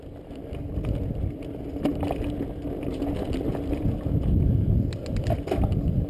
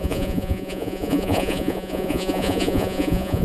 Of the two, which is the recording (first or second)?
first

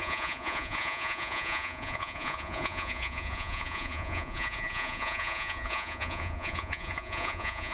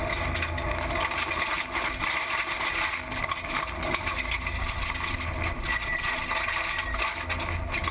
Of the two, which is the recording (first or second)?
second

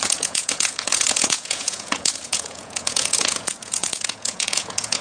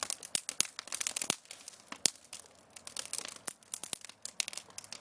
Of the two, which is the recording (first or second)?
second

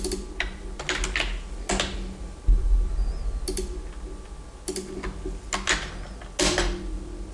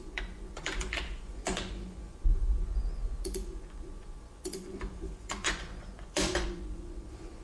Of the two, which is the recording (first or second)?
first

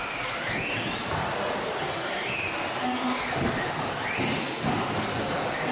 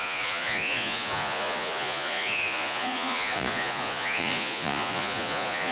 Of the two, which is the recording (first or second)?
first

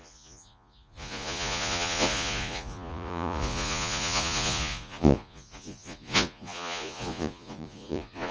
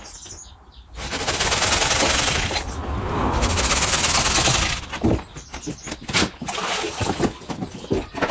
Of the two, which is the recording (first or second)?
second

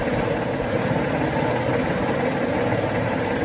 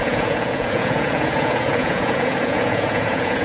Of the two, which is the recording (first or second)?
first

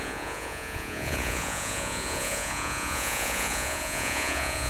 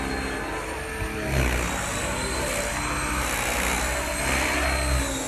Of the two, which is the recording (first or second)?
second